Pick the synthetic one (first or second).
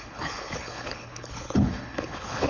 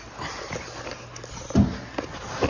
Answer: first